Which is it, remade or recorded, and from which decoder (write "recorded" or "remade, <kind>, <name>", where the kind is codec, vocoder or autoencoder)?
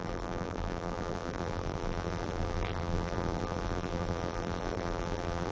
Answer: remade, vocoder, BigVGAN v2